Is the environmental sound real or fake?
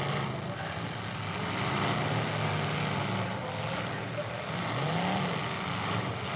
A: real